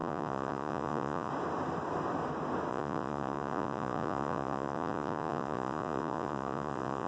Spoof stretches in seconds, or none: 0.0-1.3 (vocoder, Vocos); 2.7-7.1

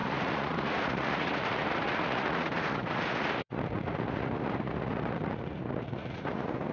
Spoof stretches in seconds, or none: 0.0-6.7 (vocoder, Vocos)

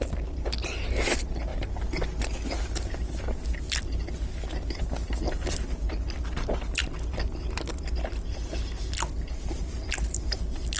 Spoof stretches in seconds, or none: none

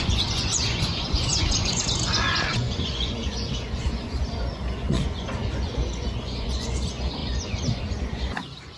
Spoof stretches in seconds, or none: 0.0-8.8 (vocoder, Vocos)